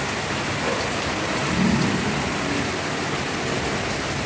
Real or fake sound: real